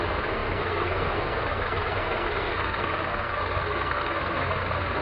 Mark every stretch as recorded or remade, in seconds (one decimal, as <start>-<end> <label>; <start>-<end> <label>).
0.0-5.0 remade